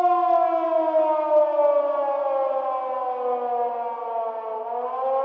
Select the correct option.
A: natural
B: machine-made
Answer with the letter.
A